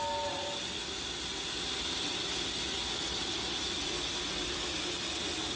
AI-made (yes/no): no